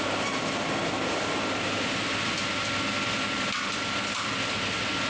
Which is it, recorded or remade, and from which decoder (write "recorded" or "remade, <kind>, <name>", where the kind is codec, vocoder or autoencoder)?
recorded